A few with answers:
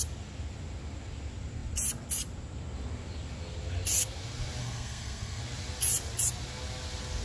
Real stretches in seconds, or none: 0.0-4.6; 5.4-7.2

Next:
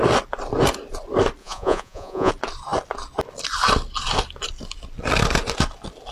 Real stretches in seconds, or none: 0.0-1.4; 2.3-6.1

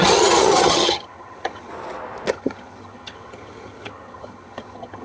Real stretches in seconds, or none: 1.7-2.3